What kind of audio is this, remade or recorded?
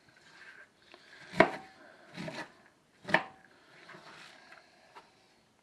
recorded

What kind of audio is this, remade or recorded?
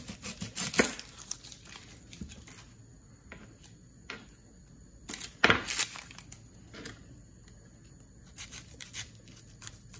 recorded